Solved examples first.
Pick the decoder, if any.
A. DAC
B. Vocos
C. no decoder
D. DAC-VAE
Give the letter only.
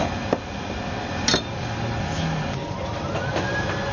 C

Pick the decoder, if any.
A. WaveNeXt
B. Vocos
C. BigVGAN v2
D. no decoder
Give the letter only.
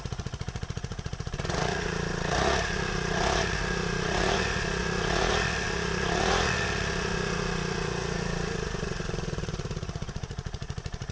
B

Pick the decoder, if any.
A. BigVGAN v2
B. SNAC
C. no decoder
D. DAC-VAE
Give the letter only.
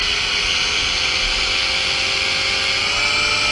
C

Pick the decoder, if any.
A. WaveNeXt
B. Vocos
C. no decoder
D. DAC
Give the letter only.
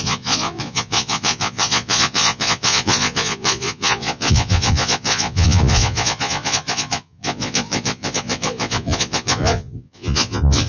B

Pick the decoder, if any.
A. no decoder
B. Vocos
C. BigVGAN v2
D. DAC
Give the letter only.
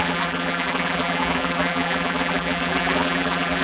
C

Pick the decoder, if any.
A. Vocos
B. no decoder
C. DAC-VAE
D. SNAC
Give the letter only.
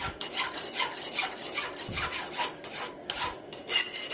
B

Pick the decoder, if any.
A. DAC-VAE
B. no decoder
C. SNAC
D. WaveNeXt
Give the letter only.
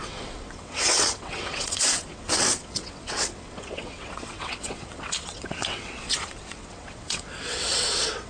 D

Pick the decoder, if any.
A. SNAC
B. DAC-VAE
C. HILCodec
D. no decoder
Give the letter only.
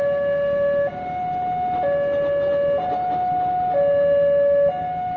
D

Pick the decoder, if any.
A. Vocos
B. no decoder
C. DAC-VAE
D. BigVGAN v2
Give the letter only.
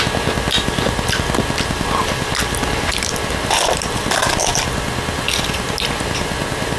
B